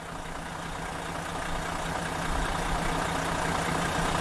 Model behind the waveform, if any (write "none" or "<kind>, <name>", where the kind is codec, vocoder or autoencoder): none